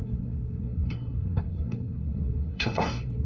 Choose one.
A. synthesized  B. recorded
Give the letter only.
A